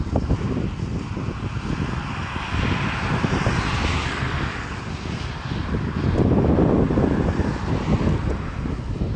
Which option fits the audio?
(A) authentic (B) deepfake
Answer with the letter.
A